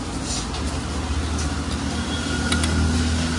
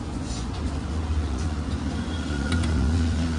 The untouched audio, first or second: first